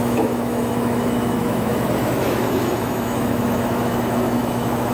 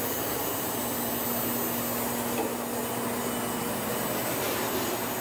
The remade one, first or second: first